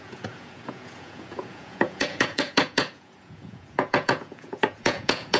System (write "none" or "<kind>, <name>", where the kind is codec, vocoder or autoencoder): vocoder, Vocos